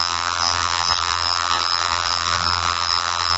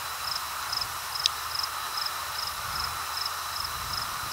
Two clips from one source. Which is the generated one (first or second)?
first